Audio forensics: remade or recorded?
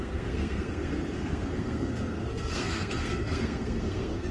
remade